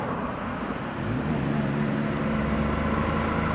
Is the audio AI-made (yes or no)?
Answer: no